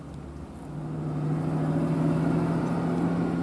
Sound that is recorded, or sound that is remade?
recorded